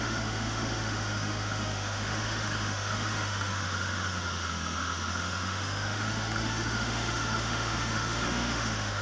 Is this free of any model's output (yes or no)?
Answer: no